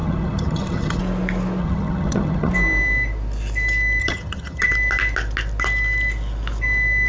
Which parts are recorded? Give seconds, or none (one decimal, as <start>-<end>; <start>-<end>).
1.0-1.6; 2.5-4.0; 4.7-7.1